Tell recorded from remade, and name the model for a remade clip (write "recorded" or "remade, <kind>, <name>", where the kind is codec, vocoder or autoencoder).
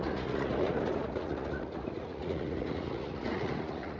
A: remade, vocoder, Vocos